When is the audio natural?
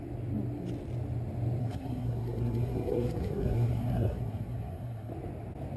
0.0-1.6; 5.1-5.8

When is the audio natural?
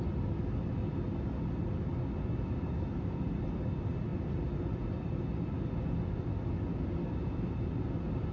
0.0-8.3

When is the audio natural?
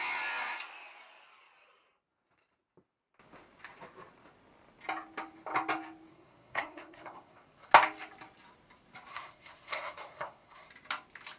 0.0-6.1; 7.7-9.1; 10.7-11.4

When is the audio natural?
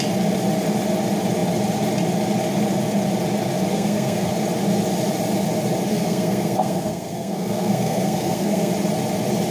0.0-3.7; 4.3-5.9; 8.7-9.5